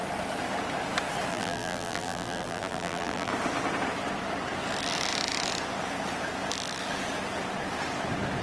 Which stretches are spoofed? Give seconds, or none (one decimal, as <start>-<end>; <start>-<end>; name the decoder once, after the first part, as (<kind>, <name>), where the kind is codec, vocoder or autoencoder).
1.3-3.3 (vocoder, BigVGAN v2)